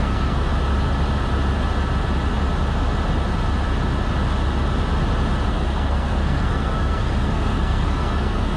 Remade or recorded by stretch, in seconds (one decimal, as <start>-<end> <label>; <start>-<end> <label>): 0.0-0.5 remade; 0.5-5.5 recorded; 5.5-8.6 remade